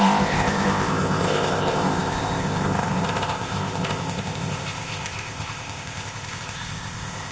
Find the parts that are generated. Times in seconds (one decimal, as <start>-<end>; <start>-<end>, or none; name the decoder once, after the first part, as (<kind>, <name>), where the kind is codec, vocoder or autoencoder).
0.0-7.3 (codec, ZipCodec)